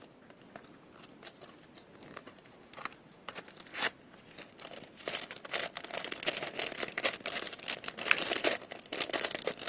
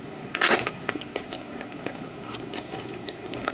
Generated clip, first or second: second